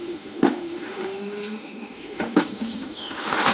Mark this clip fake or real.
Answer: fake